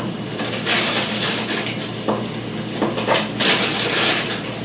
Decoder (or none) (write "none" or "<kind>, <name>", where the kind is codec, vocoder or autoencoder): none